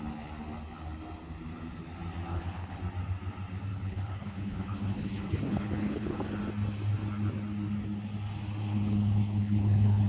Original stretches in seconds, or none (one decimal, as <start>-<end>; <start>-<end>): 0.0-2.3; 2.8-3.7; 6.2-8.6